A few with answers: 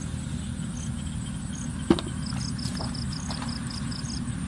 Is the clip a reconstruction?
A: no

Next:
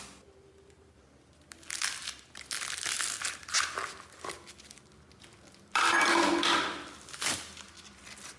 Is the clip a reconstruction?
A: no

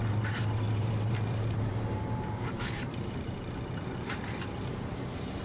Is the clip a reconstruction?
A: yes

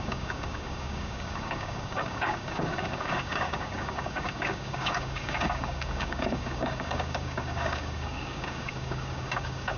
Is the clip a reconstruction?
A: yes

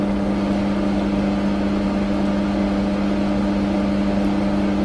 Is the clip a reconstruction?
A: no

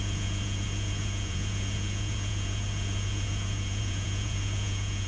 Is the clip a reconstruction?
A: yes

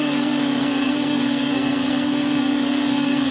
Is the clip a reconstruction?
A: yes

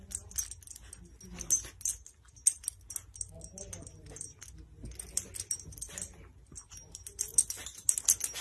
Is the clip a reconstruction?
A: no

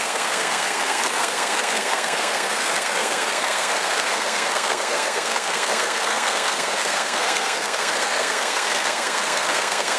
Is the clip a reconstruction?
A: yes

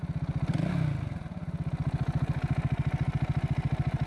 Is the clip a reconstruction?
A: no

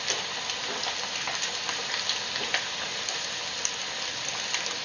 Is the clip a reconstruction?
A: no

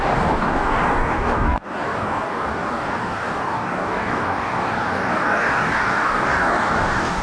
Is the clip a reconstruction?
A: yes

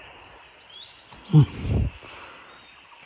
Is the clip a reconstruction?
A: no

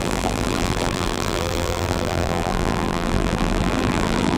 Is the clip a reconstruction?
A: yes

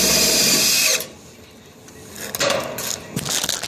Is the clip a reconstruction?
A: no